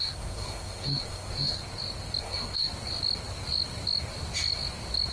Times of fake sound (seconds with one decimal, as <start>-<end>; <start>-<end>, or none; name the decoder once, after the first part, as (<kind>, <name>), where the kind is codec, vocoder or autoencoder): 0.0-1.6 (codec, SNAC); 2.2-2.7